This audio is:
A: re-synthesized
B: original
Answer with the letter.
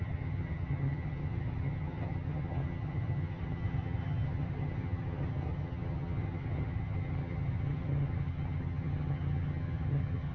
A